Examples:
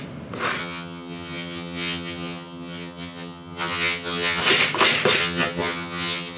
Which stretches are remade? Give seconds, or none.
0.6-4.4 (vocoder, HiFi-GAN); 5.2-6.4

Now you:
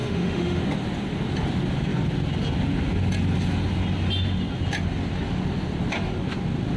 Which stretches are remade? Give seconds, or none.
0.0-0.6 (autoencoder, DAC-VAE)

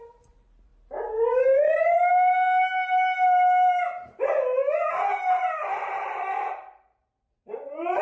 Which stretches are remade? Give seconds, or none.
0.0-0.7 (vocoder, BigVGAN v2); 5.1-8.0

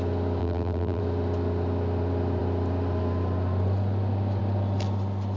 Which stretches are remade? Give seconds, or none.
0.4-1.0 (vocoder, BigVGAN v2)

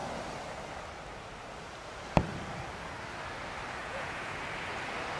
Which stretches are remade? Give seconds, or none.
3.8-4.4 (vocoder, Vocos)

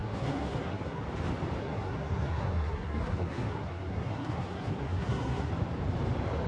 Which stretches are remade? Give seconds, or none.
0.0-1.0 (codec, SNAC); 1.6-5.5

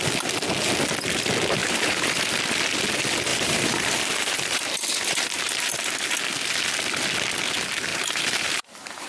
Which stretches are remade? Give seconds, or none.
1.6-2.3 (vocoder, BigVGAN v2); 3.3-5.9; 7.9-9.1